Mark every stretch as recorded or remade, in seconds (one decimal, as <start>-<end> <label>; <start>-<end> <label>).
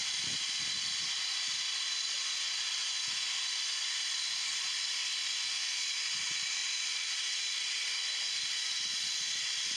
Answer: 0.0-6.6 recorded; 6.6-8.0 remade; 8.0-9.8 recorded